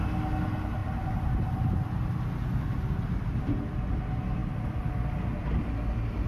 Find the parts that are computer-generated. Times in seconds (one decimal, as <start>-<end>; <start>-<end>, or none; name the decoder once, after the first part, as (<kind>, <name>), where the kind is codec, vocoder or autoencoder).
4.4-5.1 (vocoder, BigVGAN v2)